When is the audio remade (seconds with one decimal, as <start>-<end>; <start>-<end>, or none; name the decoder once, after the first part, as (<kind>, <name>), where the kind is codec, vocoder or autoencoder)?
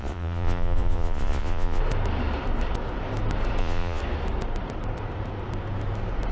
0.0-1.8 (vocoder, Vocos); 3.6-4.0